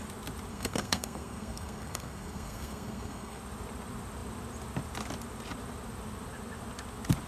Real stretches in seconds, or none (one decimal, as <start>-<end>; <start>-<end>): 0.0-0.5; 3.4-7.3